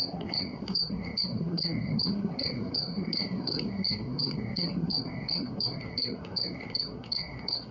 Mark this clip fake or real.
fake